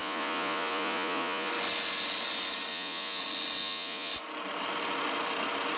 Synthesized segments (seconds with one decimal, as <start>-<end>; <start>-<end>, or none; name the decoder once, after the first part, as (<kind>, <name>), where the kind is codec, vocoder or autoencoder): 0.0-1.5 (vocoder, Vocos); 2.7-3.2; 3.6-4.1